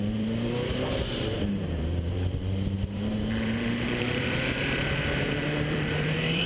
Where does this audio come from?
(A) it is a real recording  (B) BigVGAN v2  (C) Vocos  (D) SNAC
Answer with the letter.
B